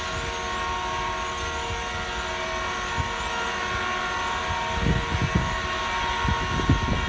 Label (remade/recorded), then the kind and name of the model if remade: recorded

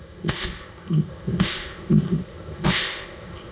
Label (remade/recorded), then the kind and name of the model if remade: remade, codec, ZipCodec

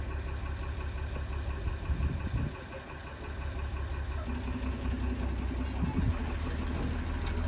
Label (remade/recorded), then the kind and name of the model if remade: recorded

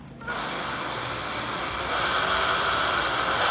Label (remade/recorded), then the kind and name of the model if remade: recorded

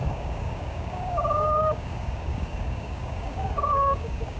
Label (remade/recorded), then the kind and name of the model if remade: remade, codec, DAC